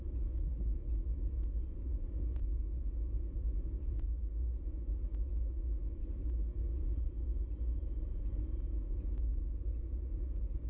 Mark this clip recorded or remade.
remade